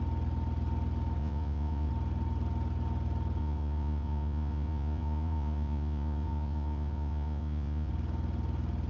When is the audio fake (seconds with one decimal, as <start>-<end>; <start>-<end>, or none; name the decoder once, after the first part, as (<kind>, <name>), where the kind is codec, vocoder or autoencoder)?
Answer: 1.2-1.9 (vocoder, Vocos); 3.4-7.9